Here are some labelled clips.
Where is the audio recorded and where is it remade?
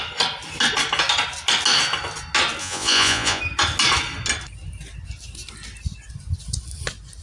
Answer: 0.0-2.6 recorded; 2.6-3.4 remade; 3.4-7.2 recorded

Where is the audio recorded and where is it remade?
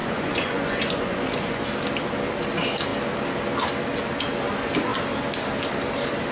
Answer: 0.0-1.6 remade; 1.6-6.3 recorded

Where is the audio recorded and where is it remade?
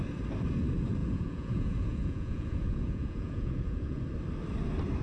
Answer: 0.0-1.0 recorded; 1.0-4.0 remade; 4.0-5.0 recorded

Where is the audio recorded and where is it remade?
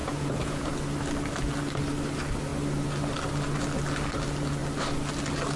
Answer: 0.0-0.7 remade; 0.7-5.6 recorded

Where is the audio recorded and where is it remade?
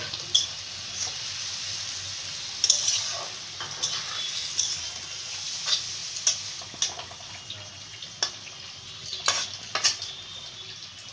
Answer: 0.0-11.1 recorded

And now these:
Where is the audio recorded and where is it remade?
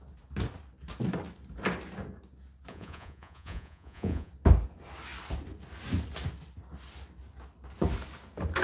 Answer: 0.0-2.7 recorded; 2.7-4.3 remade; 4.3-8.6 recorded